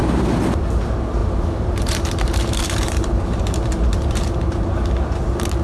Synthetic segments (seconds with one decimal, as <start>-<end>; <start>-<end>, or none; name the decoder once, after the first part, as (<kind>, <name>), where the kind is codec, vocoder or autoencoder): 1.2-4.6 (vocoder, BigVGAN v2)